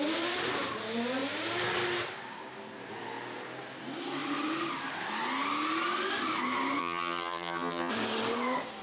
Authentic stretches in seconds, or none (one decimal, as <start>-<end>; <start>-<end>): 0.0-6.8; 7.9-8.8